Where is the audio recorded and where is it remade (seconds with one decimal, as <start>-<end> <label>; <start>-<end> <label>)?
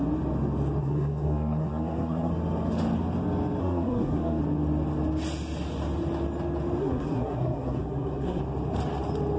0.0-0.8 recorded; 0.8-2.3 remade; 2.3-3.6 recorded; 3.6-4.4 remade; 4.4-6.8 recorded; 6.8-8.4 remade; 8.4-9.4 recorded